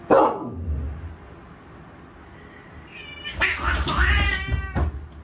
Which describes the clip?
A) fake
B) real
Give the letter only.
B